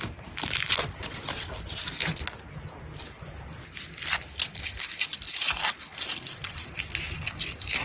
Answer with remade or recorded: recorded